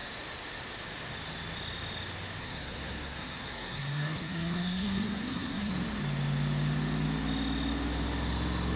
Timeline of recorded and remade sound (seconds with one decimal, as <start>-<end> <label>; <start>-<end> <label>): 0.0-2.4 recorded; 2.4-5.7 remade; 5.7-8.8 recorded